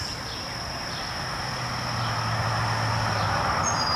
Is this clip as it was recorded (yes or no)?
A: yes